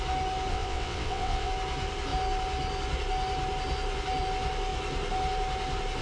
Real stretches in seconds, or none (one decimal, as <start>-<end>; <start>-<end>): 0.0-0.5; 1.5-6.0